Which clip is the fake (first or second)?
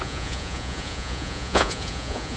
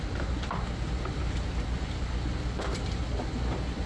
first